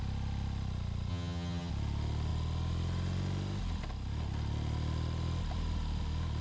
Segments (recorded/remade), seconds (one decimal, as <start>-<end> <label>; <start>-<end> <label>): 0.0-1.1 recorded; 1.1-1.7 remade; 1.7-6.4 recorded